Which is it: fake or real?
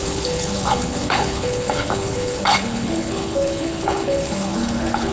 fake